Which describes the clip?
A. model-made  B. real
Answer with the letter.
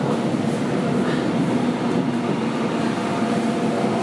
B